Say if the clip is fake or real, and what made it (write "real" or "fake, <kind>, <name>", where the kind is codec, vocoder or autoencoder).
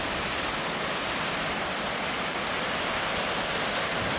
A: real